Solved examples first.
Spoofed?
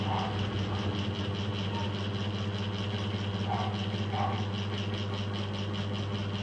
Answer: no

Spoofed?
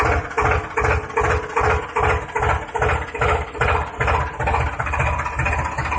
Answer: no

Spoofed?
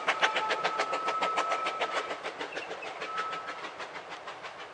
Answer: no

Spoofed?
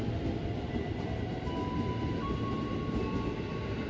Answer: no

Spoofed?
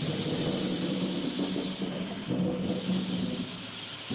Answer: no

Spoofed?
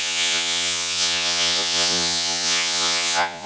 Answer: yes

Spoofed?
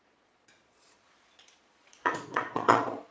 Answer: yes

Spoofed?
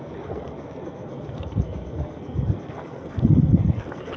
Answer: yes